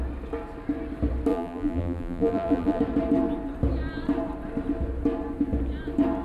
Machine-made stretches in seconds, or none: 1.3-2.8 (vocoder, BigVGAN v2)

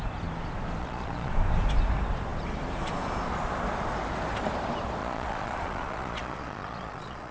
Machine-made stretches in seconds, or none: 0.8-1.3 (vocoder, Vocos); 5.0-7.3

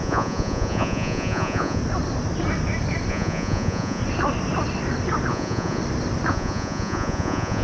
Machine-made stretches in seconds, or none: 0.0-1.8 (vocoder, Vocos); 3.1-4.0; 5.3-5.8; 6.3-7.6

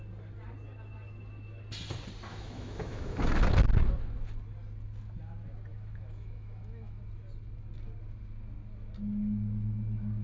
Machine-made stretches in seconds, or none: 2.3-3.3 (autoencoder, DAC-VAE); 5.7-7.0

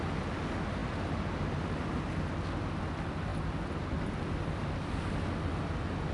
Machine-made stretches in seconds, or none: none

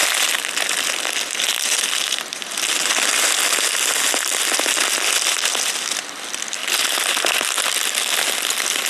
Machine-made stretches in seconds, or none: none